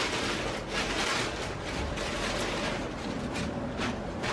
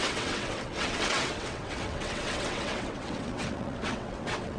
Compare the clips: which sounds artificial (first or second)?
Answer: second